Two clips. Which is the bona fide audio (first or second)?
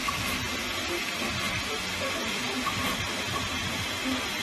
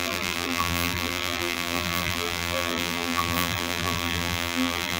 first